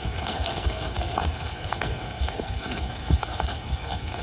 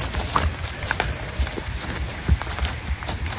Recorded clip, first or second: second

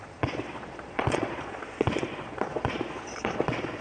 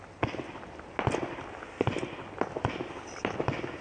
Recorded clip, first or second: second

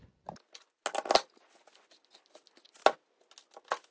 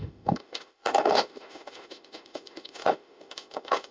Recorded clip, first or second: first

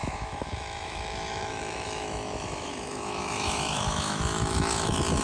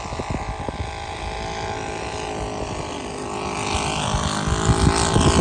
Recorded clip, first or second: second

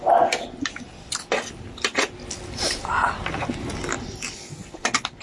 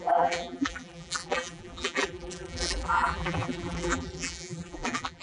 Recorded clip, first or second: first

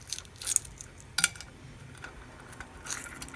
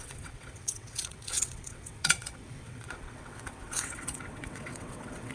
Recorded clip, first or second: first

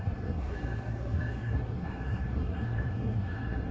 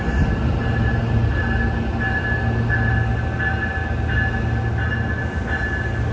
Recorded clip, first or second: second